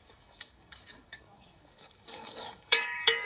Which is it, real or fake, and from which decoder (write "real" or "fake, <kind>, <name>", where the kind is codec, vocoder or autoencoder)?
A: fake, codec, DAC